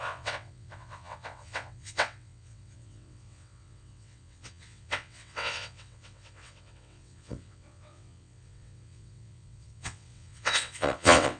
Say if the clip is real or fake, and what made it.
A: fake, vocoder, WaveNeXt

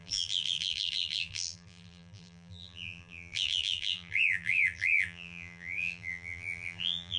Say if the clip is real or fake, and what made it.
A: fake, vocoder, BigVGAN v2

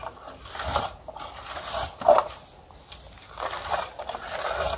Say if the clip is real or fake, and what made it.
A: real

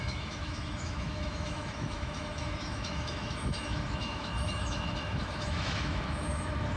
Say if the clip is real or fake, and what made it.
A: fake, autoencoder, DAC-VAE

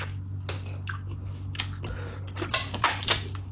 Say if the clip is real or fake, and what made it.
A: real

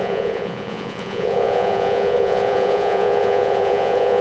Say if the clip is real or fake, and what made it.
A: fake, vocoder, Vocos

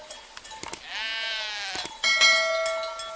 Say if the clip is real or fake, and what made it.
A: real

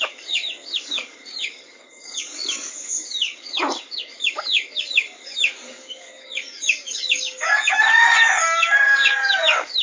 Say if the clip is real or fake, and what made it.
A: fake, codec, DAC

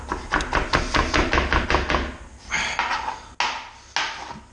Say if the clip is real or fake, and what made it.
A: real